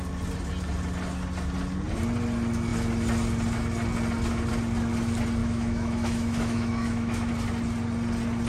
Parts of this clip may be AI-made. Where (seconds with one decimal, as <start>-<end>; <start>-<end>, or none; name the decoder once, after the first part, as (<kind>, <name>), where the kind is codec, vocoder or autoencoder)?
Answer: 5.4-7.3 (autoencoder, DAC-VAE)